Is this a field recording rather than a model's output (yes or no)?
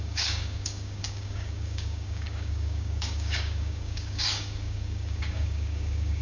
no